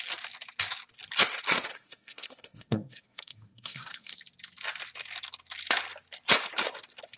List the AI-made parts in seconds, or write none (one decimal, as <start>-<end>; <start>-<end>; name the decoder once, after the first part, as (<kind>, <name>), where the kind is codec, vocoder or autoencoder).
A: 1.7-4.1 (codec, SNAC)